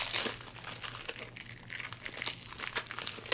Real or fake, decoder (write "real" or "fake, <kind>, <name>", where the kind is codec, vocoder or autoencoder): real